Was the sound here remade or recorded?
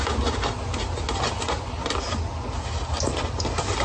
recorded